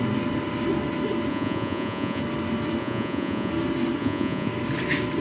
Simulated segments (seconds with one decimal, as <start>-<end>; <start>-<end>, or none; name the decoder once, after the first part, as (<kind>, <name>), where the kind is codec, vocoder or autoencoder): 1.3-2.2 (vocoder, Vocos); 2.8-3.5; 4.0-4.5